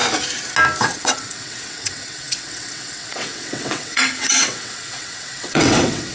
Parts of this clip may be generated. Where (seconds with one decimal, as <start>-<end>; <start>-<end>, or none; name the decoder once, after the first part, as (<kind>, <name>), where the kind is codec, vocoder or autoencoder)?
0.8-6.1 (vocoder, WaveNeXt)